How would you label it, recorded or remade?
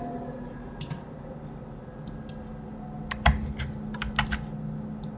recorded